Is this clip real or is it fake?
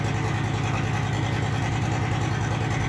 real